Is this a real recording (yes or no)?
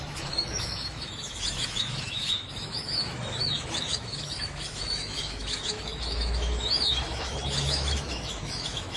no